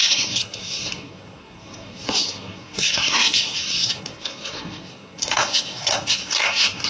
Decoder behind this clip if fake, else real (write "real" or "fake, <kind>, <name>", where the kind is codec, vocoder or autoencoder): fake, codec, SNAC